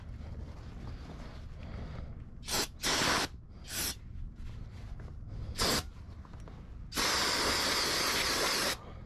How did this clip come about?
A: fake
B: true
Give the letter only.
B